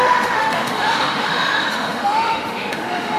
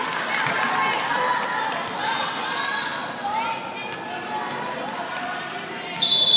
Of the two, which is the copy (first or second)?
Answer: first